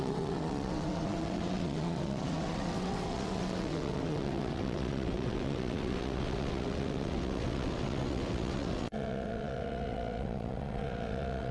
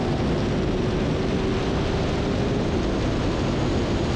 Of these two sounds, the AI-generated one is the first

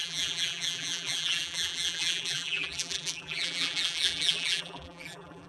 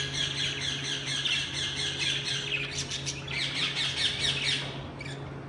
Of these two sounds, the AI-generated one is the first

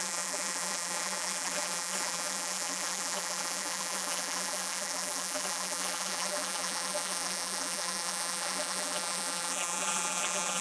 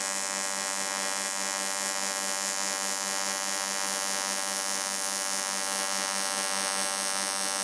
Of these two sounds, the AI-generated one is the first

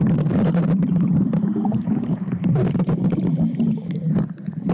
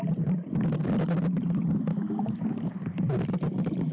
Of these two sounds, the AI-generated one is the first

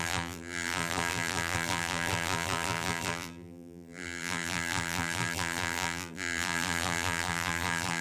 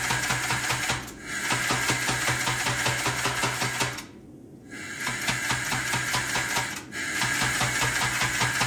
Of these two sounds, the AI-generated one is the first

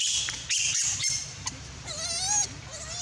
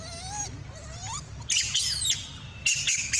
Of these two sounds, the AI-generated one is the first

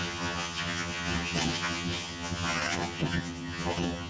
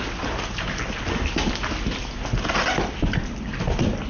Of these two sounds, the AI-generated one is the first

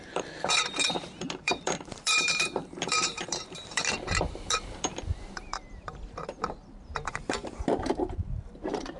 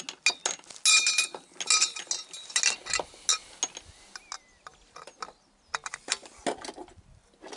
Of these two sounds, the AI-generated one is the first